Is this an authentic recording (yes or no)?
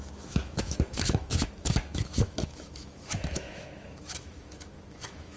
no